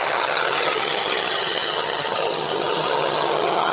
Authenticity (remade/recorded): remade